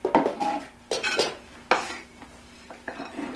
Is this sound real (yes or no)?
yes